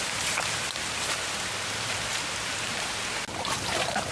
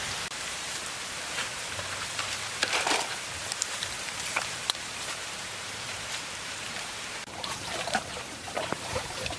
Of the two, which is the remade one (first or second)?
second